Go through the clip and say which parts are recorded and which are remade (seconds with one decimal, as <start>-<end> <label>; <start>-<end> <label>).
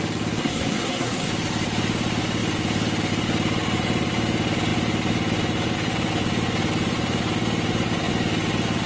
0.0-0.4 recorded; 0.4-1.3 remade; 1.3-8.9 recorded